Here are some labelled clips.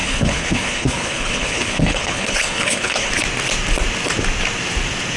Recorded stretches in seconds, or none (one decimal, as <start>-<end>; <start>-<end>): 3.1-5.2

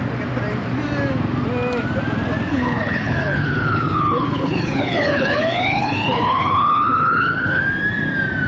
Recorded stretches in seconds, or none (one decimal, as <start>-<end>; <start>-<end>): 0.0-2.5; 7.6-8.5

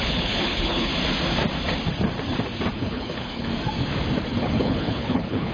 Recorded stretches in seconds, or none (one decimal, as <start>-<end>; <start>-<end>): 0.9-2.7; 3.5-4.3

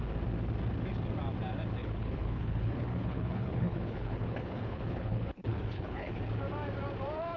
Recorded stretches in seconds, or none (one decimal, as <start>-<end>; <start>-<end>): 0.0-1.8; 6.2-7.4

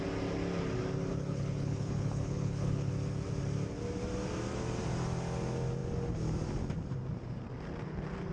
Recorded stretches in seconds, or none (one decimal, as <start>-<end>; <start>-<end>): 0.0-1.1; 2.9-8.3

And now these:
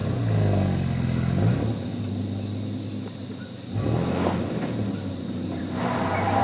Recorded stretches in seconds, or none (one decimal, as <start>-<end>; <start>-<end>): 0.0-6.4

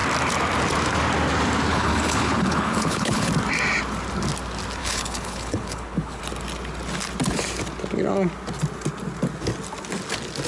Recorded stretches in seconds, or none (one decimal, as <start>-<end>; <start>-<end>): 0.0-1.7; 3.3-4.8; 6.2-10.5